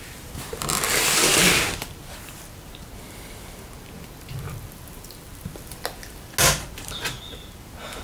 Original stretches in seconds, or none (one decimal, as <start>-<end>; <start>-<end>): 0.0-8.0